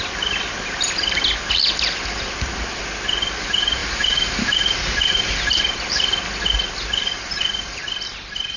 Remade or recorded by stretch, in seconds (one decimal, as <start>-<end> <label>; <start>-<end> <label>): 0.0-8.6 recorded